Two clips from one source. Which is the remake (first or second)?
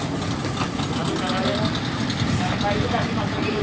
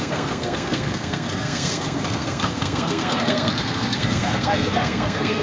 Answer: second